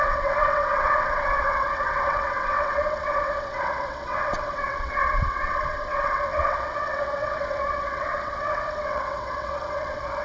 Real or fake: fake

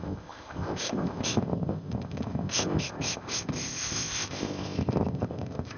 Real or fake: fake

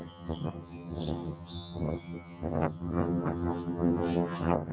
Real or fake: fake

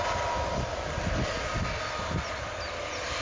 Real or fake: real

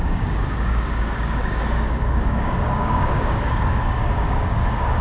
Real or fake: fake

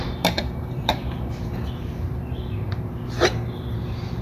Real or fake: fake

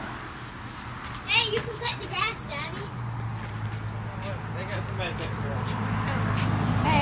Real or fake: real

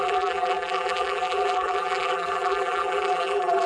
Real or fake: fake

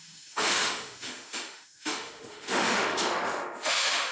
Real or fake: fake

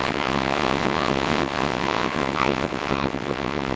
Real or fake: fake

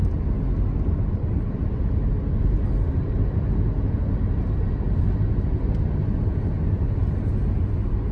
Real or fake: real